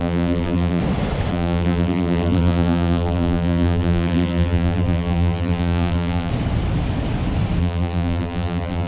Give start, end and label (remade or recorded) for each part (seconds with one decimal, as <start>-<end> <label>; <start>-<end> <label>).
0.0-0.8 remade; 0.8-1.3 recorded; 1.3-6.3 remade; 6.3-7.6 recorded; 7.6-8.9 remade